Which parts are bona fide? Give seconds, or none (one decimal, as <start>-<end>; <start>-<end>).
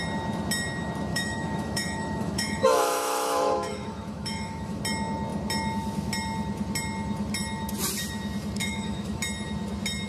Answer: 0.0-1.1; 4.8-8.6; 9.2-10.1